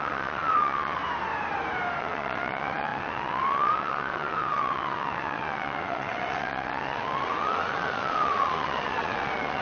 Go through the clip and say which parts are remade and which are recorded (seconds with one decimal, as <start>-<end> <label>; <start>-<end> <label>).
0.0-1.0 remade; 1.0-2.0 recorded; 2.0-9.6 remade